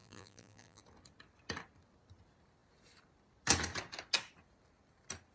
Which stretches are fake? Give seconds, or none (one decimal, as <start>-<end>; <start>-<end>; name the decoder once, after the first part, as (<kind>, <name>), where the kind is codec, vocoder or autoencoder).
0.0-0.8 (vocoder, BigVGAN v2)